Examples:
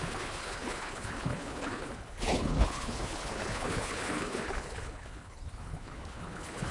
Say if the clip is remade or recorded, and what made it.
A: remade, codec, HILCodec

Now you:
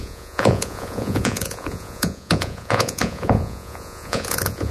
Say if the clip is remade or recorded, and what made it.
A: remade, vocoder, Vocos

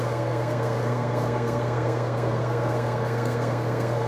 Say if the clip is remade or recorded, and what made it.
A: remade, codec, SNAC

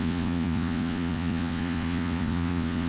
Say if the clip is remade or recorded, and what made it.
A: remade, vocoder, Vocos